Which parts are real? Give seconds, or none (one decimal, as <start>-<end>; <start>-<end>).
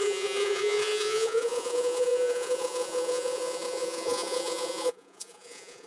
none